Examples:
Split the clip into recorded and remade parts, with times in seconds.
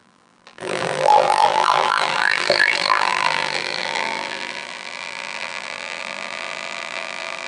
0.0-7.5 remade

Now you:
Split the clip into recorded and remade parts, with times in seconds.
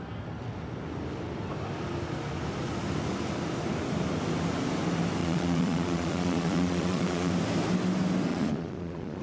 0.0-5.2 recorded; 5.2-7.3 remade; 7.3-8.3 recorded; 8.3-9.2 remade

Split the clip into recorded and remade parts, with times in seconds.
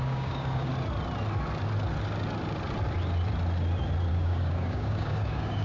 0.0-0.7 remade; 0.7-4.1 recorded; 4.1-5.6 remade